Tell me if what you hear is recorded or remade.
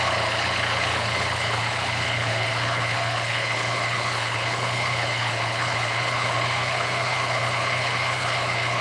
remade